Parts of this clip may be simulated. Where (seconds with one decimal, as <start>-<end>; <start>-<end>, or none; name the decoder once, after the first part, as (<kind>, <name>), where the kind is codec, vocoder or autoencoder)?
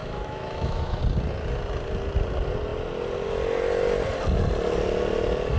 0.0-1.0 (autoencoder, DAC-VAE)